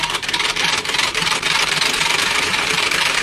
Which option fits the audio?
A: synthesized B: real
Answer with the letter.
A